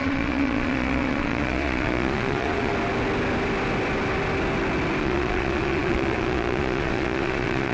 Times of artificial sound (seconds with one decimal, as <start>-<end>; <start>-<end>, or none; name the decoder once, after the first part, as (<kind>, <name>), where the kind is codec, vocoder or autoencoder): 0.0-2.7 (vocoder, Vocos); 5.0-7.7